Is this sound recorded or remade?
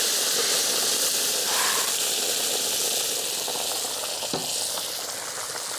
recorded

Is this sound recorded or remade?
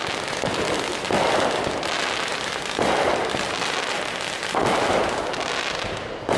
recorded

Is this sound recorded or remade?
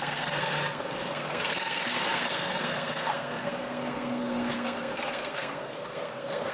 remade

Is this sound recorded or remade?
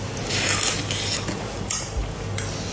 recorded